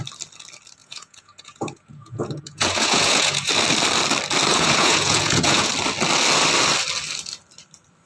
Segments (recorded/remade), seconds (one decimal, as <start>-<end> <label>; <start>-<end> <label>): 0.0-0.8 recorded; 0.8-3.5 remade; 3.5-4.5 recorded; 4.5-5.7 remade; 5.7-8.1 recorded